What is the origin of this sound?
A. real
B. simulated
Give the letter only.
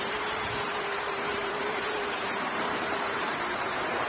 B